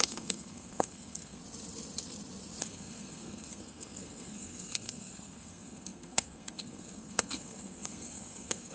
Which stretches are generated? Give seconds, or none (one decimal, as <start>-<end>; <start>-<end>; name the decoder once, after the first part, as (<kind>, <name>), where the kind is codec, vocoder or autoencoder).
0.0-1.4 (codec, SNAC); 2.6-8.7